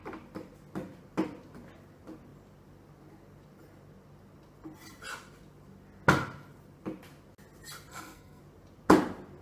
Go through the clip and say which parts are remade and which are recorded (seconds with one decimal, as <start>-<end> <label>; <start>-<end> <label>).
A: 0.0-7.9 recorded; 7.9-8.4 remade; 8.4-9.4 recorded